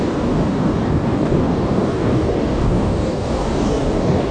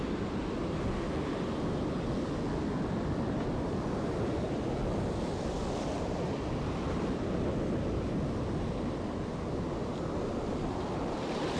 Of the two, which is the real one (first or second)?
second